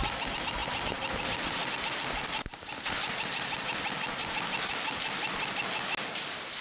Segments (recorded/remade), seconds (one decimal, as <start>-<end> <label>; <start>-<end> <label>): 0.0-6.6 recorded